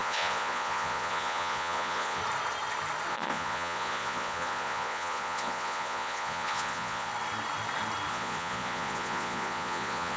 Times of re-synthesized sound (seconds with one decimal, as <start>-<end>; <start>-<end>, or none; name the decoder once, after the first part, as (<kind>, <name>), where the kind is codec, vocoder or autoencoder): 0.0-2.2 (vocoder, Vocos); 3.1-7.1; 8.1-10.2